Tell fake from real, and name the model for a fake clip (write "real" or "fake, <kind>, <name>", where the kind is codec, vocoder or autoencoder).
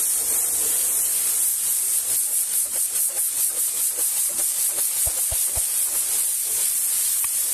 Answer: real